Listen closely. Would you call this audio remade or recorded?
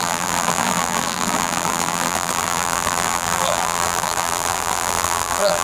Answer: remade